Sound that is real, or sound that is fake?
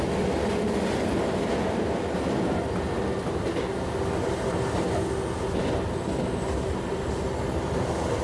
real